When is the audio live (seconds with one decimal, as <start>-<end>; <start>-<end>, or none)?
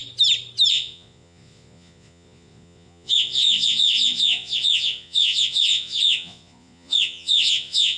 0.0-0.7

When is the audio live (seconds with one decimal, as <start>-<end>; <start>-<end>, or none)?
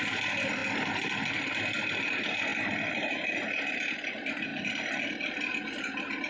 0.0-2.5; 4.1-4.5; 5.4-6.3